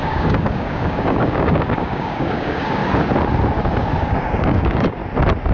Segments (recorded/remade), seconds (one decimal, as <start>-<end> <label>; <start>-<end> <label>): 0.0-2.8 remade; 2.8-4.0 recorded; 4.0-5.0 remade; 5.0-5.5 recorded